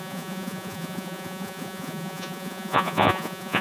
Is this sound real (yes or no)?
no